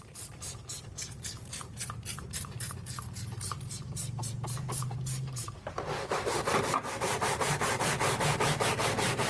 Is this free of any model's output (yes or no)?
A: no